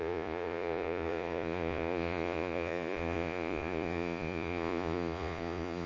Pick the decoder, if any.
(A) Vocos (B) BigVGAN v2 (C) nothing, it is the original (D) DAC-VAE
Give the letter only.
A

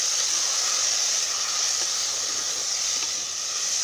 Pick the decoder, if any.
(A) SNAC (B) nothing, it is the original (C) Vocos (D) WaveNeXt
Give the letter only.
B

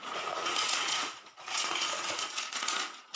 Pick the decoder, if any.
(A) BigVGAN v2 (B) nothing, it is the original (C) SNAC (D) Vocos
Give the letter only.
D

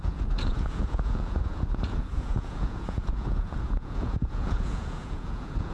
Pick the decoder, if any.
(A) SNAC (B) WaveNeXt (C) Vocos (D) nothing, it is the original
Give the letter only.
C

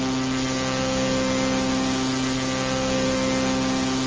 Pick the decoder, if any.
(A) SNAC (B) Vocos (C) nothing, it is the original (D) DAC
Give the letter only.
C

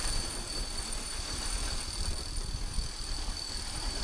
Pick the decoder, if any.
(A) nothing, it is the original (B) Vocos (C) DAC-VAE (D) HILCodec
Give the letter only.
A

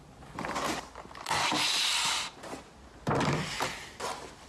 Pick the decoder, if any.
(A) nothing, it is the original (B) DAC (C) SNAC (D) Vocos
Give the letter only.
A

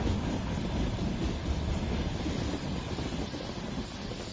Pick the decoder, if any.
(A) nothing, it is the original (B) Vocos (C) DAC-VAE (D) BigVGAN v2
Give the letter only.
A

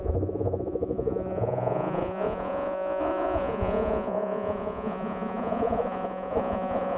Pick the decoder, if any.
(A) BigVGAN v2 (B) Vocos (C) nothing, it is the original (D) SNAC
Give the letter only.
B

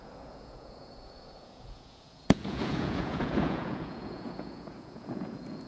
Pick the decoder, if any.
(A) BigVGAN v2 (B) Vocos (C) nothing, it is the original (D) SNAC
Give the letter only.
B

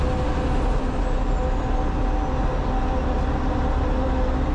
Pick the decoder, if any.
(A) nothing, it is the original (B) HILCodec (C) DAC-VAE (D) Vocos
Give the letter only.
A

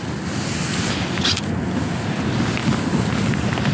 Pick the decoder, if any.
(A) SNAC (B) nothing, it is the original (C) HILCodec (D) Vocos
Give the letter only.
B